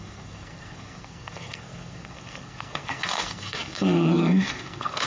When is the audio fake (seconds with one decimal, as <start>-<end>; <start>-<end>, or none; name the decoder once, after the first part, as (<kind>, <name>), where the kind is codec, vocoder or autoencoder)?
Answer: 0.0-5.1 (codec, SNAC)